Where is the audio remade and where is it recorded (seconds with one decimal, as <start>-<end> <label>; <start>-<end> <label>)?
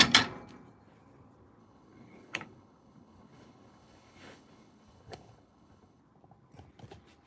0.0-1.6 recorded; 1.6-6.0 remade; 6.0-7.3 recorded